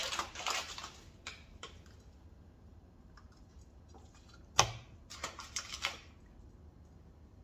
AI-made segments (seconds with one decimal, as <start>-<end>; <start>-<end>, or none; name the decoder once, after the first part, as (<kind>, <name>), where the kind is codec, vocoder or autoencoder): 0.0-4.4 (vocoder, BigVGAN v2)